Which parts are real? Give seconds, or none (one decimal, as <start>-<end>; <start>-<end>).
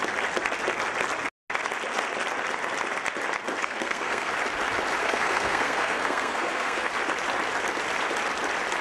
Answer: 0.0-3.6; 4.3-5.0; 6.9-8.8